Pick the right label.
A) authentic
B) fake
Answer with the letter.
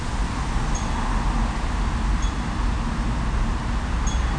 A